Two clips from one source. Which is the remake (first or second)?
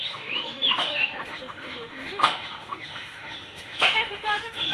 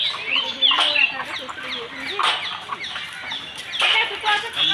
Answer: first